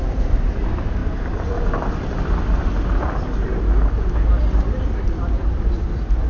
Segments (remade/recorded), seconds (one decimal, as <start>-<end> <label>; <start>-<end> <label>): 0.0-1.0 remade; 1.0-4.4 recorded; 4.4-6.3 remade